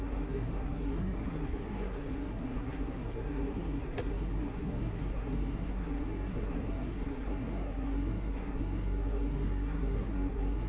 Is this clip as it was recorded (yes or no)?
no